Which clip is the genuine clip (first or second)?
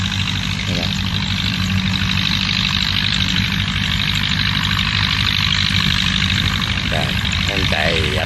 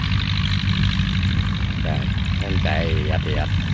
second